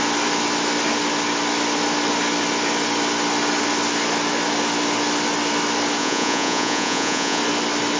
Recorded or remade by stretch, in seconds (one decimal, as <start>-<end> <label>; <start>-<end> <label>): 0.0-6.0 recorded; 6.0-7.4 remade; 7.4-8.0 recorded